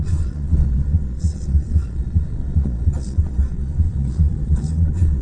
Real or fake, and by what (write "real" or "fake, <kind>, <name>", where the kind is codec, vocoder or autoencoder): fake, vocoder, Vocos